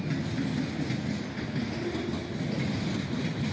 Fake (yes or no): no